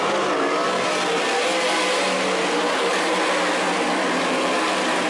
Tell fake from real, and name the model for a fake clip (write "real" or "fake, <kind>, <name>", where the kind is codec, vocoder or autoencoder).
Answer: real